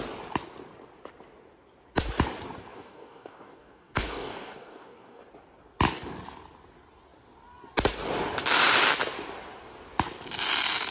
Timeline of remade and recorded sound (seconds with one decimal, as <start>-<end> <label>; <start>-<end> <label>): 0.0-2.7 recorded; 2.7-5.2 remade; 5.2-10.9 recorded